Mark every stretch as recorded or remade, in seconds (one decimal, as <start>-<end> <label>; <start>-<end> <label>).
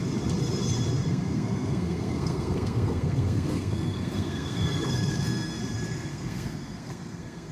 0.0-1.1 recorded; 1.1-5.6 remade; 5.6-6.1 recorded; 6.1-7.5 remade